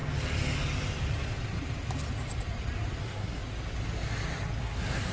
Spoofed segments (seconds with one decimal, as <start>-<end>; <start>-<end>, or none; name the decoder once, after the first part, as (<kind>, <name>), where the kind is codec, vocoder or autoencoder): 3.0-3.4 (codec, SNAC); 4.6-5.1